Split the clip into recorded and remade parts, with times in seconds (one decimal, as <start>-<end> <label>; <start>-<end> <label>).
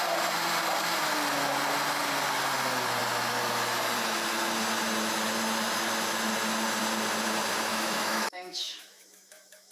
0.0-7.7 recorded; 7.7-9.7 remade